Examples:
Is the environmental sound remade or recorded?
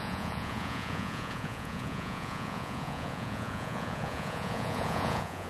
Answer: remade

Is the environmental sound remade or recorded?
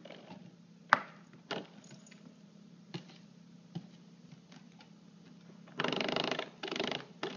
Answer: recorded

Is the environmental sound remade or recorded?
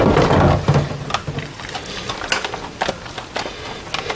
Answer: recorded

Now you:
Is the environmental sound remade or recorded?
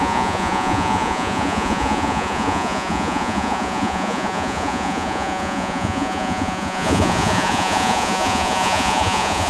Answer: remade